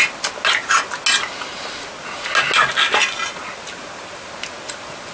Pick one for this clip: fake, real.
real